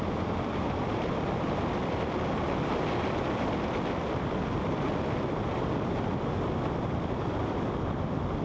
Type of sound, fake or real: fake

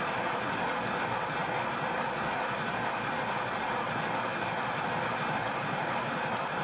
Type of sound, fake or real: real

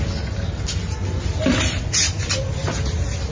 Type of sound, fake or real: real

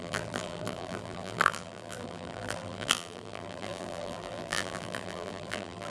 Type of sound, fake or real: fake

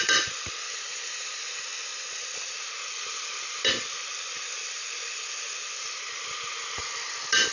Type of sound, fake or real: real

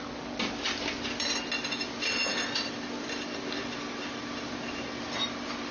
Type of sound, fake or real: real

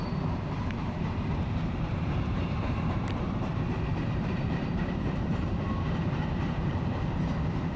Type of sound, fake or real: fake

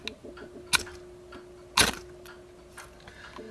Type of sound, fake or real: real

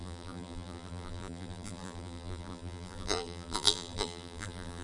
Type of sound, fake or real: fake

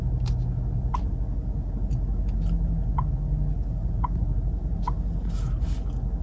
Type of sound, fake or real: real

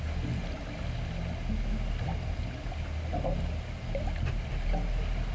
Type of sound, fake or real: real